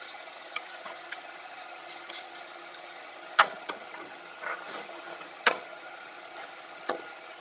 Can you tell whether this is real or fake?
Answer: fake